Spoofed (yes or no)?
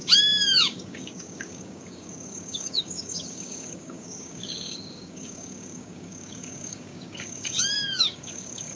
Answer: yes